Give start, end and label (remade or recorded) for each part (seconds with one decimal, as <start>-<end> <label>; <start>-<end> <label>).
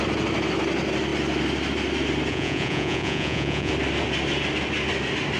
0.0-2.3 recorded; 2.3-3.7 remade; 3.7-5.4 recorded